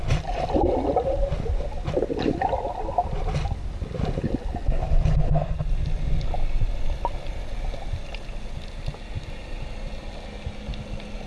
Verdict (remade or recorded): recorded